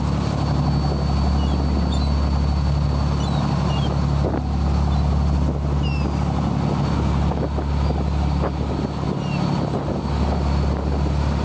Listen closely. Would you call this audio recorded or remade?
recorded